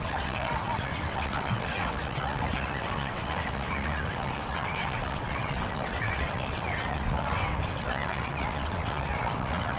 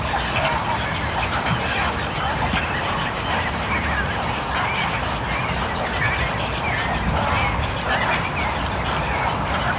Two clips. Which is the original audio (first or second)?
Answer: second